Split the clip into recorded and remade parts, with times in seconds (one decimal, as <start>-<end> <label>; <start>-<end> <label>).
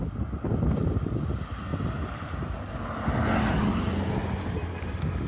0.0-5.3 recorded